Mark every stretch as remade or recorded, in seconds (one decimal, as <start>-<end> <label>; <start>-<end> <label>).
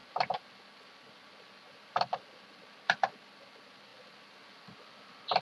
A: 0.0-5.4 recorded